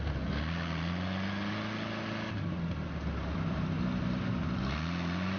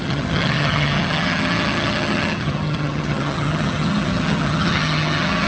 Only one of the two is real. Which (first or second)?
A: first